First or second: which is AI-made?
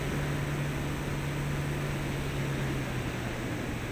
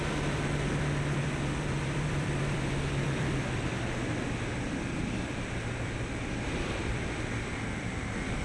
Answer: second